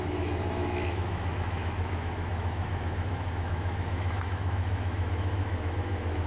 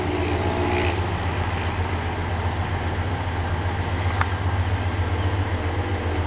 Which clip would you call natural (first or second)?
second